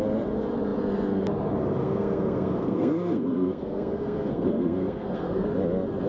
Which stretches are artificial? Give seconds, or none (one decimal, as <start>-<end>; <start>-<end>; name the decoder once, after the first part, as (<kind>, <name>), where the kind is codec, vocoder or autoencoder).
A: 1.8-5.5 (codec, SNAC)

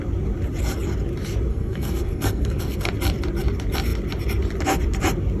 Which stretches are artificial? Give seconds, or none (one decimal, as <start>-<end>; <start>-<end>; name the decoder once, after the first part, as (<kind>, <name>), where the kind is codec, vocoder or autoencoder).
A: 1.5-2.9 (codec, SNAC)